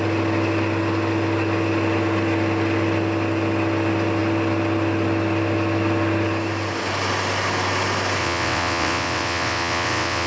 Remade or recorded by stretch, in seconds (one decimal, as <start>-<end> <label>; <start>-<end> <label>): 0.0-8.2 recorded; 8.2-10.3 remade